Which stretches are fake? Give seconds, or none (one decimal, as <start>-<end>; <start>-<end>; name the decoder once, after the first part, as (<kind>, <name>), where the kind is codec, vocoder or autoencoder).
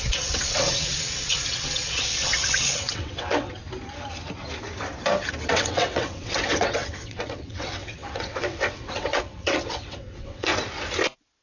0.0-3.6 (vocoder, WaveNeXt); 5.5-10.5